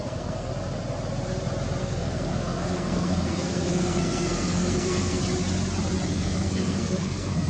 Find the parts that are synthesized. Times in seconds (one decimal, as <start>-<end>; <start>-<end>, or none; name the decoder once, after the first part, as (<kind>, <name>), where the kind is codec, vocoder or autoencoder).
0.0-0.5 (codec, SNAC); 1.8-5.2; 6.1-7.5